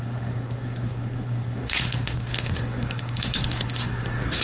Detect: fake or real fake